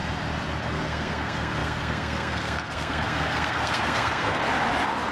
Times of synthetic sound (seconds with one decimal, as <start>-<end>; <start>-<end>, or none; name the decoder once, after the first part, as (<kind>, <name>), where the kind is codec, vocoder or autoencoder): 0.6-4.4 (codec, SNAC)